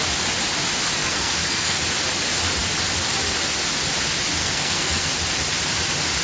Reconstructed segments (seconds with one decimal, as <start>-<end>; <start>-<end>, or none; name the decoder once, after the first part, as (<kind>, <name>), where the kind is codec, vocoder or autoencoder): 1.0-1.8 (codec, SNAC); 4.4-5.1